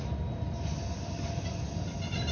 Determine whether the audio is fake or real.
real